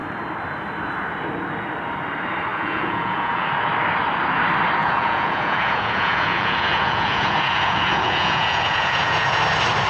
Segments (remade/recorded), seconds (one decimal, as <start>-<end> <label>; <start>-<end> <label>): 0.0-2.5 recorded; 2.5-3.5 remade; 3.5-4.8 recorded; 4.8-9.4 remade; 9.4-9.9 recorded